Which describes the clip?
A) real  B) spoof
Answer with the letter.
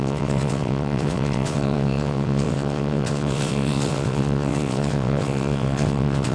B